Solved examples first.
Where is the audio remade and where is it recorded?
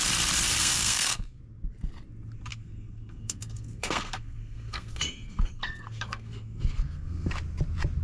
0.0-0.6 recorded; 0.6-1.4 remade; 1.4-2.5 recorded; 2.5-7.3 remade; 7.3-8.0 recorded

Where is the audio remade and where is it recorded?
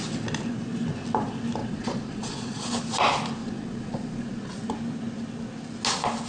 0.0-1.6 recorded; 1.6-2.7 remade; 2.7-3.4 recorded; 3.4-4.5 remade; 4.5-6.3 recorded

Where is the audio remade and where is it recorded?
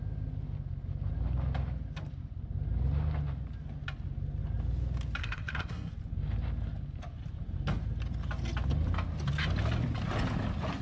0.0-5.2 recorded; 5.2-5.9 remade; 5.9-10.8 recorded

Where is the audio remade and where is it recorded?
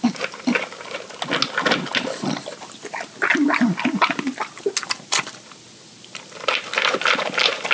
0.0-7.7 recorded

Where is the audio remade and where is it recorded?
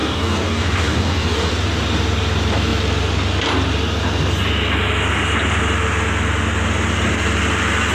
0.0-1.5 remade; 1.5-7.9 recorded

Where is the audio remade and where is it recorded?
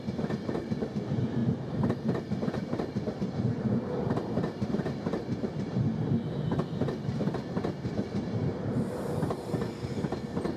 0.0-1.4 recorded; 1.4-5.8 remade; 5.8-8.5 recorded; 8.5-9.5 remade; 9.5-10.6 recorded